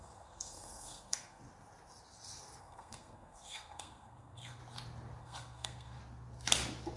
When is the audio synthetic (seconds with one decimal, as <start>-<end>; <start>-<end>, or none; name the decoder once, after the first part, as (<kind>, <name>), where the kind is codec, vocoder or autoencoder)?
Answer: 0.0-1.4 (codec, SNAC); 2.6-4.6; 5.2-6.0